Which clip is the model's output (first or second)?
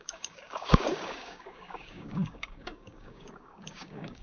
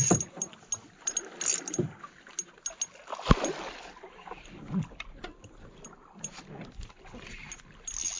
first